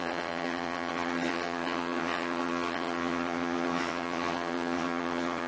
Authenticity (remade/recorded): remade